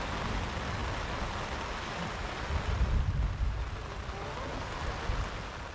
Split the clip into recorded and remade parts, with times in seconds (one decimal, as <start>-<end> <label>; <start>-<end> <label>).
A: 0.0-5.7 recorded